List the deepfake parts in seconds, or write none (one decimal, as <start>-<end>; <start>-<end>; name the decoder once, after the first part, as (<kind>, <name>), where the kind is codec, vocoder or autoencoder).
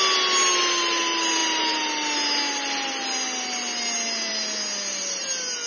none